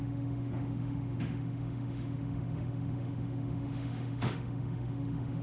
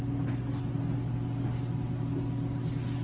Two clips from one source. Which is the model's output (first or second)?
first